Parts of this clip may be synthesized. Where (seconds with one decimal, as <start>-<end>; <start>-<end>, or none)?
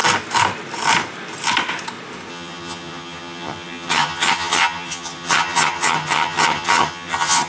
2.3-7.5